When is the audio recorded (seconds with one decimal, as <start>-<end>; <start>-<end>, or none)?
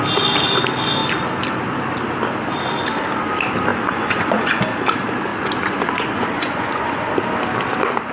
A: 0.0-3.7; 4.6-5.3; 7.1-8.1